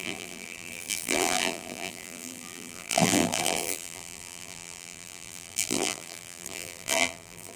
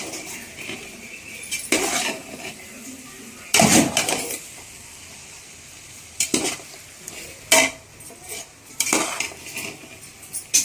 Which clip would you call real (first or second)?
second